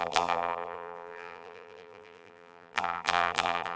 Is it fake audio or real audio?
fake